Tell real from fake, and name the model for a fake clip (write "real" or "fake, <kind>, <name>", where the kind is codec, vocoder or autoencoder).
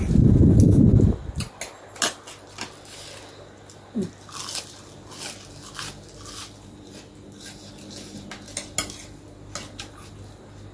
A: real